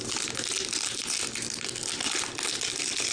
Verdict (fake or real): real